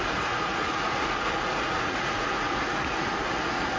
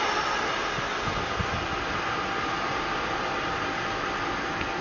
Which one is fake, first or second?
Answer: first